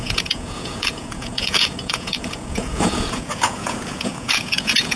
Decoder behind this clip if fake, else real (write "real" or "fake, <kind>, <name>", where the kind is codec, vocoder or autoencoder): fake, vocoder, Vocos